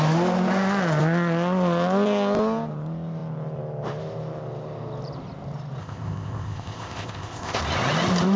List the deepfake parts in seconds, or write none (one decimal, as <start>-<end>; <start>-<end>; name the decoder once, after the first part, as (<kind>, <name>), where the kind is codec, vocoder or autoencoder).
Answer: 5.8-7.6 (codec, ZipCodec)